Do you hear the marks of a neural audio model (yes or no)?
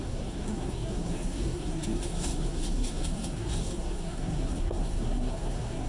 yes